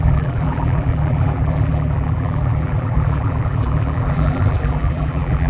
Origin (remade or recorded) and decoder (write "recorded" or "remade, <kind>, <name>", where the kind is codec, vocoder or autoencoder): remade, vocoder, BigVGAN v2